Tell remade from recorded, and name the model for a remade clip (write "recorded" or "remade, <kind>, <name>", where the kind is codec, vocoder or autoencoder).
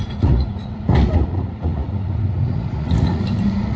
remade, vocoder, Vocos